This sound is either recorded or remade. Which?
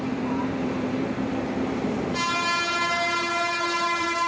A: remade